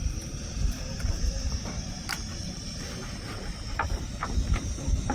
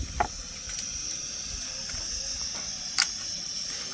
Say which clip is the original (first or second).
second